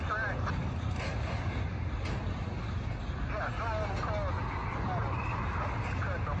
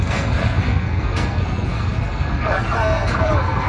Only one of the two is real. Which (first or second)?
first